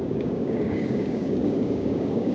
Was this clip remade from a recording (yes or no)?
yes